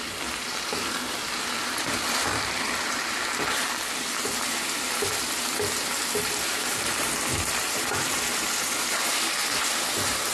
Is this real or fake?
fake